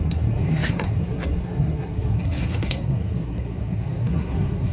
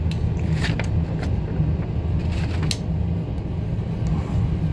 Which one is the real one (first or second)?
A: second